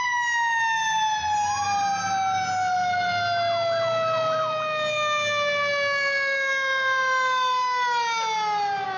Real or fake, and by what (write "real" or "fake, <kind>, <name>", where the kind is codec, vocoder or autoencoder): real